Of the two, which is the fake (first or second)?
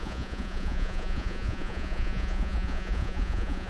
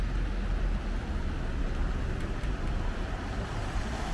first